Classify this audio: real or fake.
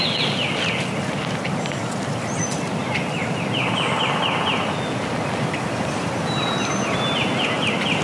real